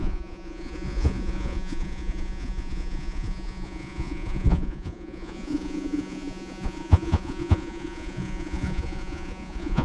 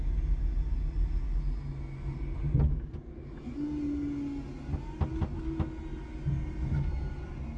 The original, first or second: second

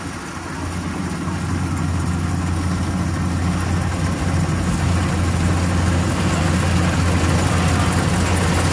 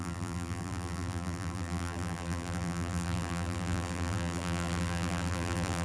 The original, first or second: first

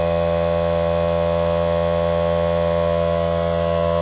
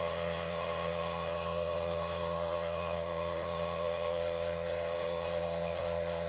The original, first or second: first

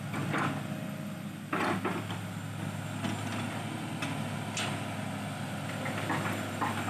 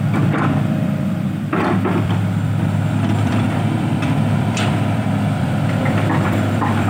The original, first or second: first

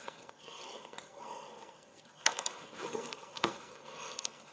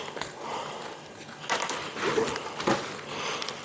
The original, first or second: second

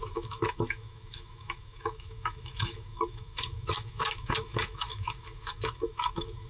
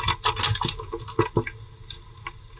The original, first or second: second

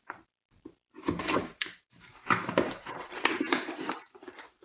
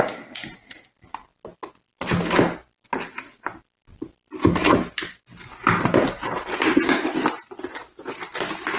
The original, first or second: second